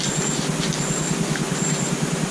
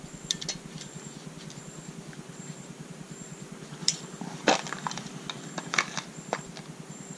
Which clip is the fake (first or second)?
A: second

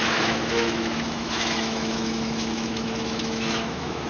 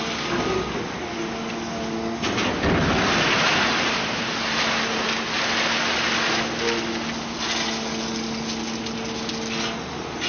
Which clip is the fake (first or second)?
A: first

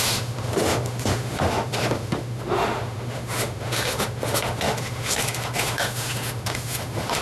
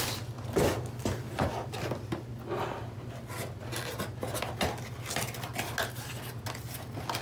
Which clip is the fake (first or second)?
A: first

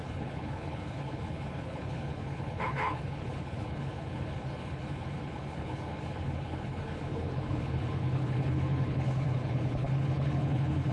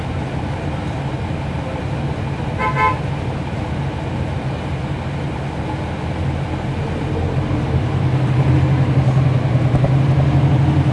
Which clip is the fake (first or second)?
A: first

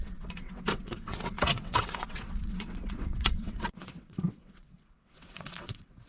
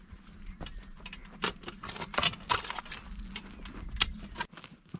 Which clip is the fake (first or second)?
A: first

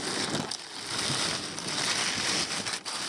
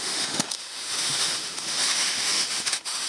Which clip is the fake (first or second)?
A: second